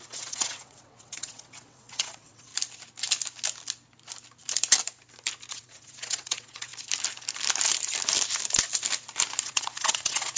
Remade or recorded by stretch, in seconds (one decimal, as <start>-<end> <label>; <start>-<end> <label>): 0.0-2.5 remade; 2.5-5.5 recorded; 5.5-6.7 remade; 6.7-9.4 recorded; 9.4-10.4 remade